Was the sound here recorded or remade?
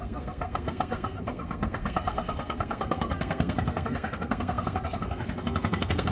remade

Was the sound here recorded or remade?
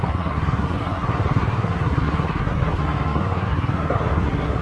remade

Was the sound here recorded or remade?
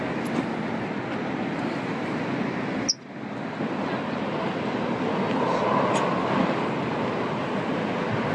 recorded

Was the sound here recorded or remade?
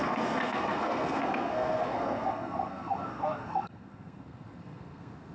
remade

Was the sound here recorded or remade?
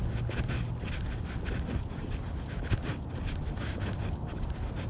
recorded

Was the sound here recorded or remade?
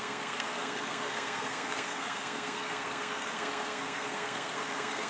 remade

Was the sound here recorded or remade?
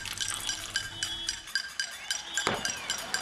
recorded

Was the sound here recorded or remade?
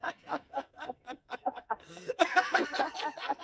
remade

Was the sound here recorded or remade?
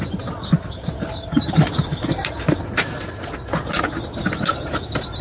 recorded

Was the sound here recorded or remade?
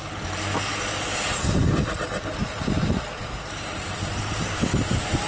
recorded